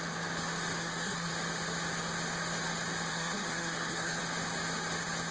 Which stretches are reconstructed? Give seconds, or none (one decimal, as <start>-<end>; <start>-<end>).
0.8-1.3; 3.1-4.2